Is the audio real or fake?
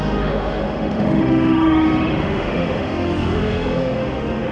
fake